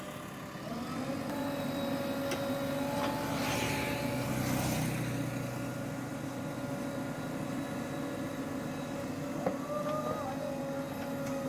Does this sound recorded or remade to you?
recorded